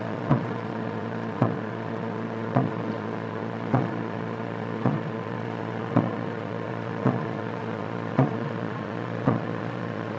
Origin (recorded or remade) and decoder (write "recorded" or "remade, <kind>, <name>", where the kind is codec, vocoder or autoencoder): remade, vocoder, Vocos